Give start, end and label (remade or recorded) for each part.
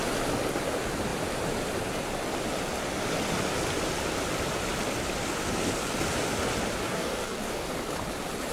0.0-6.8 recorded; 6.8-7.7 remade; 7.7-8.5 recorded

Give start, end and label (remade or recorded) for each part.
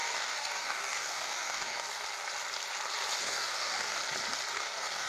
0.0-2.0 remade; 2.0-3.2 recorded; 3.2-4.0 remade; 4.0-4.5 recorded; 4.5-5.1 remade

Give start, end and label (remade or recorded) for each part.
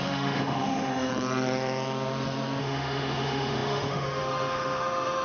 0.0-1.1 remade; 1.1-2.6 recorded; 2.6-5.2 remade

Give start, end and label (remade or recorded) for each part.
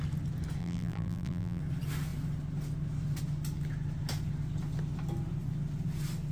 0.0-0.6 recorded; 0.6-1.6 remade; 1.6-6.3 recorded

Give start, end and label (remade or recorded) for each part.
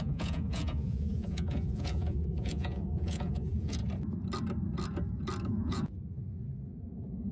0.0-3.8 remade; 3.8-5.5 recorded; 5.5-7.3 remade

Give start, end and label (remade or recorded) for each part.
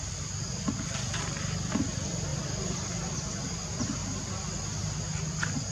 0.0-5.7 recorded